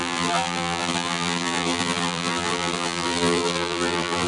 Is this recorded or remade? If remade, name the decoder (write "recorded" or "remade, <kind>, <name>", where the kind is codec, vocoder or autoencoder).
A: remade, vocoder, BigVGAN v2